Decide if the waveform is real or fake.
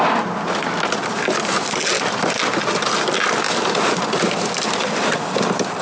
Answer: real